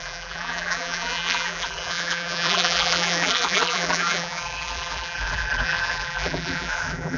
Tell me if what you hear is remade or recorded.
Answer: remade